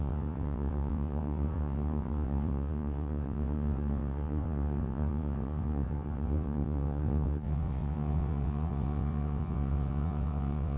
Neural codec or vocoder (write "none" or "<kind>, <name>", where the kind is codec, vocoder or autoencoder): vocoder, WaveNeXt